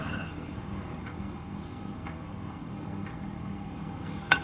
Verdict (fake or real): fake